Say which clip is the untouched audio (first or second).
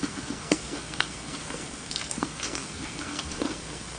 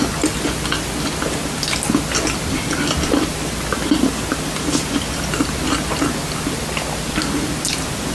second